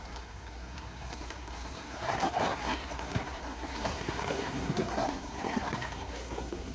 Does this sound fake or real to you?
fake